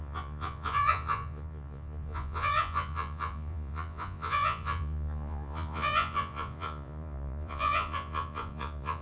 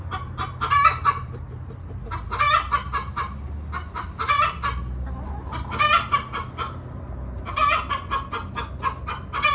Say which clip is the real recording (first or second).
second